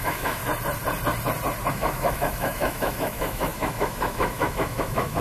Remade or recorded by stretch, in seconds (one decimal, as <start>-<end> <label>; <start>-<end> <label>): 0.0-0.4 remade; 0.4-1.7 recorded; 1.7-5.2 remade